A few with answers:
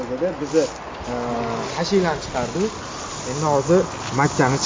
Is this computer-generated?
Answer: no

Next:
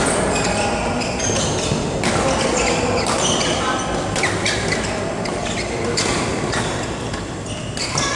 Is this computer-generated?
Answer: no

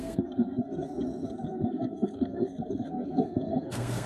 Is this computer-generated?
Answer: yes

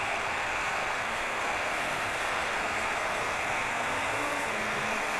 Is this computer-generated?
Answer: yes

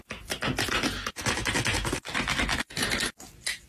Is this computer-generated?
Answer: no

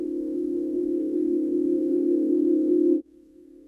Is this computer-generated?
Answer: yes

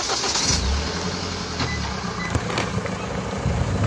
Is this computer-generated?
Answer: no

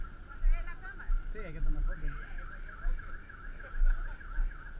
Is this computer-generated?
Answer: no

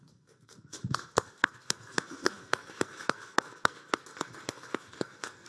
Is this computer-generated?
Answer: yes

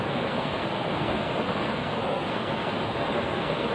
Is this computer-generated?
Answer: yes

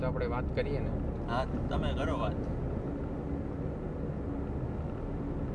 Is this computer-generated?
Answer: no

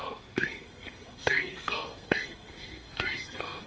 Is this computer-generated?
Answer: yes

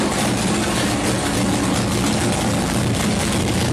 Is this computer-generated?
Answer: no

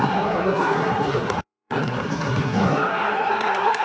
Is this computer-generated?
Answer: yes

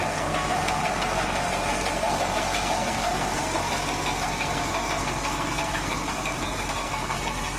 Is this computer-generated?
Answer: yes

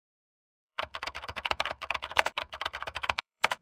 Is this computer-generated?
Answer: yes